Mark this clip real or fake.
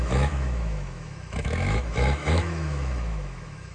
fake